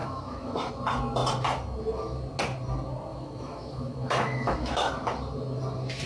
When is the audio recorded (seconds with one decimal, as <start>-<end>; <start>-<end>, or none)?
0.7-3.1; 4.9-6.1